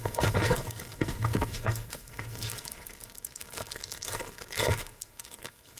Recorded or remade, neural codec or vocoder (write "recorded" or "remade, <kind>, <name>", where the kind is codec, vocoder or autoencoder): remade, codec, SNAC